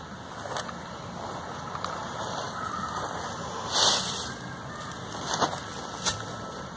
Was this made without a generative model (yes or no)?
yes